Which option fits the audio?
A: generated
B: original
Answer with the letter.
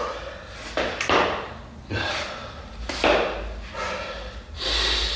B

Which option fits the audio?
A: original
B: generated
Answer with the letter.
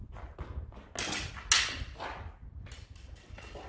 A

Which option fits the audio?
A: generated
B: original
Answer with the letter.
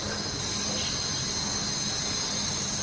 B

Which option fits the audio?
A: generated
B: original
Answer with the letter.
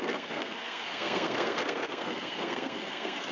A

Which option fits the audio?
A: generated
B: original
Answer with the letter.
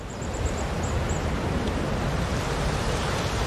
B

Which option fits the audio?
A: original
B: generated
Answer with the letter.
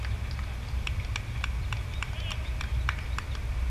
A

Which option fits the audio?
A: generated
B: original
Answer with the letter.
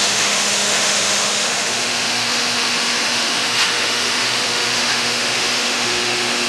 A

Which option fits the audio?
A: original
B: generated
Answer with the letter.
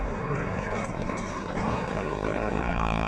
B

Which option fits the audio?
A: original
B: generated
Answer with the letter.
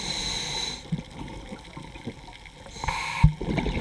A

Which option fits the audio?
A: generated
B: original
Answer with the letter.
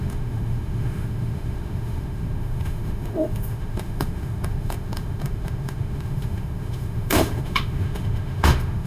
A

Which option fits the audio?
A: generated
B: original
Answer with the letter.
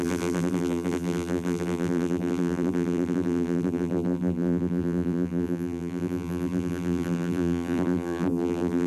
A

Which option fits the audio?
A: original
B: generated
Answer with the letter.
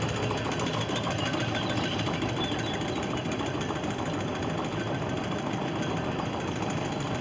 A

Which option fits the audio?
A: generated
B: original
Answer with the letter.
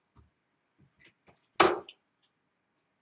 B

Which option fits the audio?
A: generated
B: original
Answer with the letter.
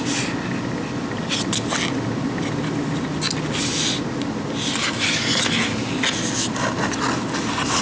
B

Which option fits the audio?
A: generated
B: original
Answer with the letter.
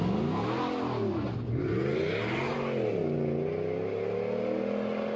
B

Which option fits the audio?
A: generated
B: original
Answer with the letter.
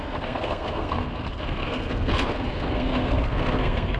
A